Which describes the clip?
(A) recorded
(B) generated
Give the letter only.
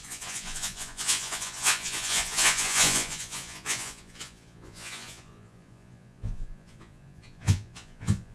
B